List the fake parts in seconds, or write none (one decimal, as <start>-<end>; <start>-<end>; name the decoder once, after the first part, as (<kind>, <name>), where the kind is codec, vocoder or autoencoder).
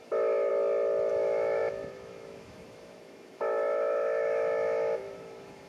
0.0-0.5 (autoencoder, DAC-VAE); 1.1-5.7